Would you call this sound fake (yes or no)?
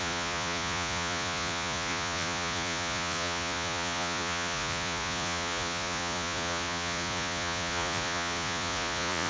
yes